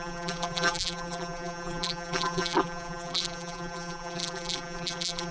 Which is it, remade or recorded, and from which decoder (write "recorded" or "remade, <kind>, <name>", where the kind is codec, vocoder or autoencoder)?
remade, vocoder, BigVGAN v2